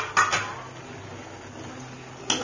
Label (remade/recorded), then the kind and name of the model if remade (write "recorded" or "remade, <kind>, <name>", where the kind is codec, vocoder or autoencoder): recorded